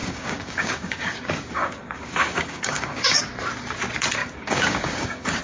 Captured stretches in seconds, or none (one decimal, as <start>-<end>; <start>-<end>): 3.2-4.2